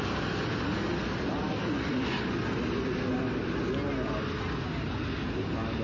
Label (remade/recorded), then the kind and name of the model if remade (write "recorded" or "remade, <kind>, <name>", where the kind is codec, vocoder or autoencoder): recorded